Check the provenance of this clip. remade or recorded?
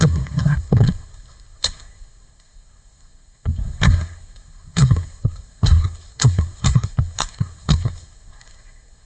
remade